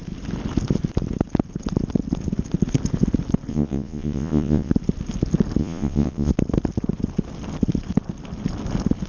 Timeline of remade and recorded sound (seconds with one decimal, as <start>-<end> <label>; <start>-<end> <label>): 0.0-3.5 recorded; 3.5-4.7 remade; 4.7-5.6 recorded; 5.6-6.3 remade; 6.3-9.1 recorded